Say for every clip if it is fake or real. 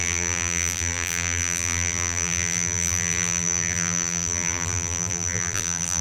fake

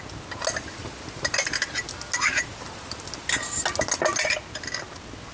real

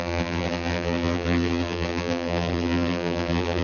fake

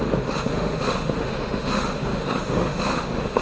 fake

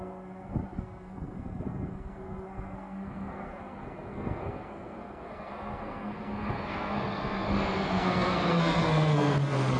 fake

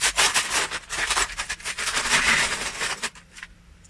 fake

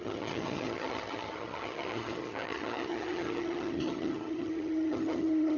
fake